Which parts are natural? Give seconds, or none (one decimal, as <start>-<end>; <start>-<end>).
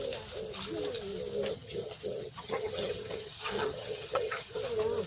0.0-1.5; 4.6-5.1